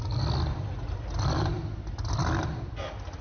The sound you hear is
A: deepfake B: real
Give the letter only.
A